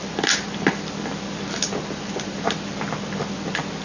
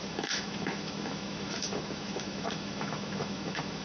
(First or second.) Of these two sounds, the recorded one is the first